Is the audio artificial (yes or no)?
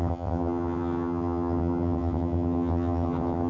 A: yes